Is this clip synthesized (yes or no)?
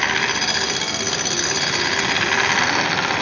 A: no